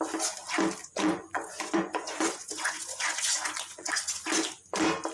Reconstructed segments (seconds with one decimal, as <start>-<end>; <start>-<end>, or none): 0.8-3.9